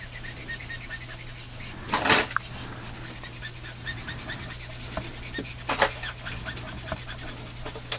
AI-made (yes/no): no